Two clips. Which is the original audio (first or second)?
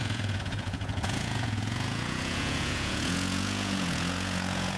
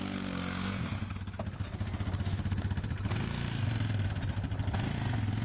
second